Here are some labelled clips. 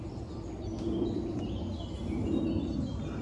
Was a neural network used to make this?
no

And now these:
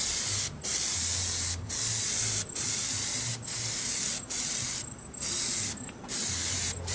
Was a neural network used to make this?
no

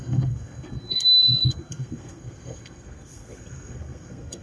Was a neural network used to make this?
yes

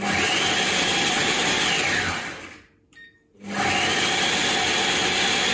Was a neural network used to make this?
no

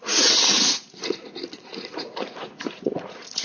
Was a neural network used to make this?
yes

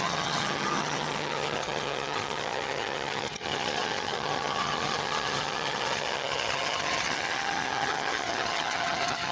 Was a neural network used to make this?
yes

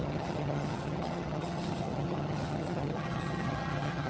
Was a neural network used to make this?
yes